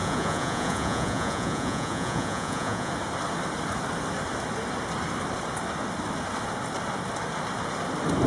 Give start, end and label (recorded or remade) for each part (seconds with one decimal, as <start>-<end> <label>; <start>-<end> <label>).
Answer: 0.0-2.9 remade; 2.9-8.3 recorded